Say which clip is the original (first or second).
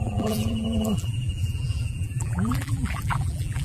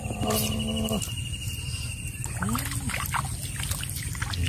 second